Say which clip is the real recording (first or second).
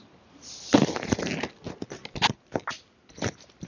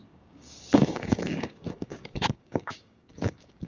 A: first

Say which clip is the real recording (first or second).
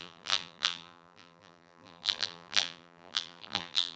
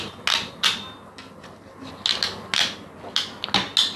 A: second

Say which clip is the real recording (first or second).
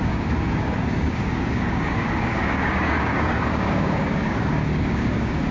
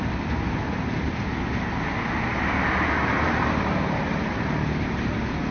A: second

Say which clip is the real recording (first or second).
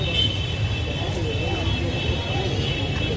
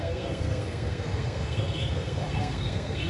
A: first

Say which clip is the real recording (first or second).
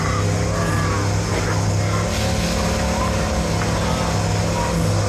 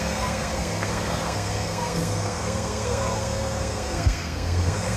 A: first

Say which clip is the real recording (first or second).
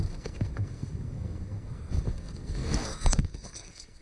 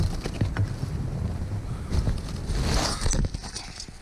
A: second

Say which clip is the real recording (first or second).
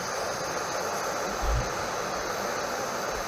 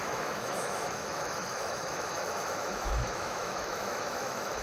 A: first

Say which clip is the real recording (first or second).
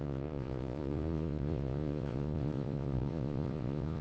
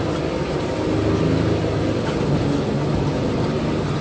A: second